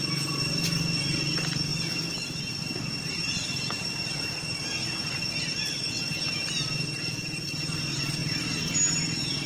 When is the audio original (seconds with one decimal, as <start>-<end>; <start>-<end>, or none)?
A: 0.0-9.5